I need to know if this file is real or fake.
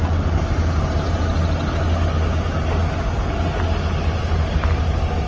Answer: real